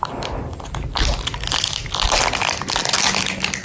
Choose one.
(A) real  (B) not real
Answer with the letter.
A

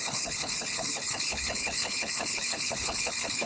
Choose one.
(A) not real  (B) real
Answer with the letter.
A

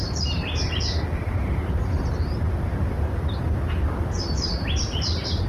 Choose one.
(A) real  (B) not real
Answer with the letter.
A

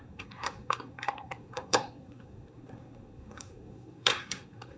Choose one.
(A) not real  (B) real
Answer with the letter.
A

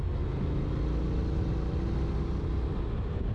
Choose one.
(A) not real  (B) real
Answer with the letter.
B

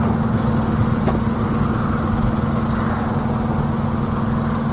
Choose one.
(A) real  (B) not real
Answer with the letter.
A